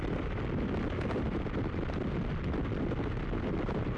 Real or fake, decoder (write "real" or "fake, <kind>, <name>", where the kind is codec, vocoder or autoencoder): real